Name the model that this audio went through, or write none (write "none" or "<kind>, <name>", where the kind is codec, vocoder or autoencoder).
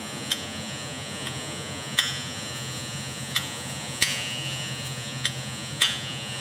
vocoder, Vocos